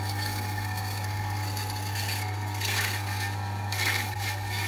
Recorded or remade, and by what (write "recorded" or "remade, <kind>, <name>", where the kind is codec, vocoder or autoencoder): remade, codec, SNAC